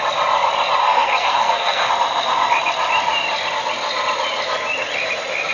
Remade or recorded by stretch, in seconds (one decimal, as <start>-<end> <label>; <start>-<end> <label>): 0.0-0.8 recorded; 0.8-1.9 remade; 1.9-5.5 recorded